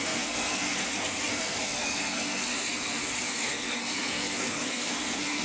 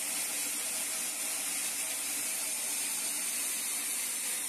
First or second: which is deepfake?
first